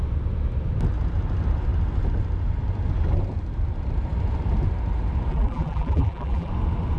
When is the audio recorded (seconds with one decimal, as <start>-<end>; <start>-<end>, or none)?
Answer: 0.0-5.3; 6.5-7.0